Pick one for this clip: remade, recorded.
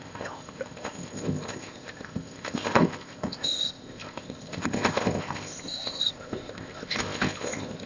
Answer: remade